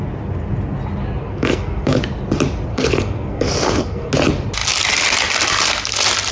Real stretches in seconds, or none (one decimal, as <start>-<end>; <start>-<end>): 0.0-1.2; 2.0-2.7; 4.1-6.3